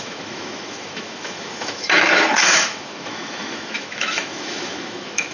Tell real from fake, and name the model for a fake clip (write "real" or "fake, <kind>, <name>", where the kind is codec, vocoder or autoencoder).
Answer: fake, autoencoder, DAC-VAE